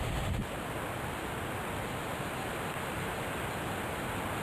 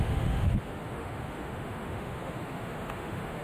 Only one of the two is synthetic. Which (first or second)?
second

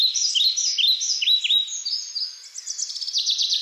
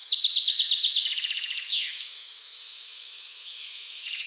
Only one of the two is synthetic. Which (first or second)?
second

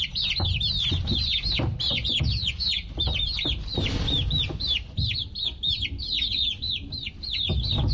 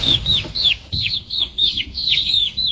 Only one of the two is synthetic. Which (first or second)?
second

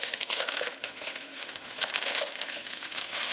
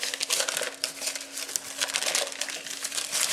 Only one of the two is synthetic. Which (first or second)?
first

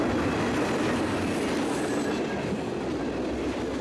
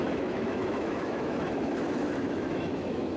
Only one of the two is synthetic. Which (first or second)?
second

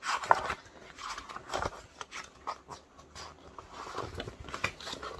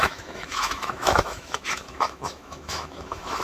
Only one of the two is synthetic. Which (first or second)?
second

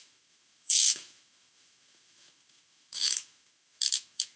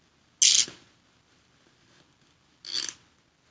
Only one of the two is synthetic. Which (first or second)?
first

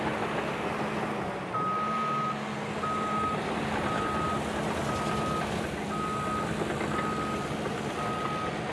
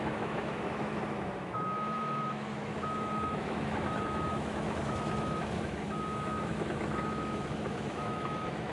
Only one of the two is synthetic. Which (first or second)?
second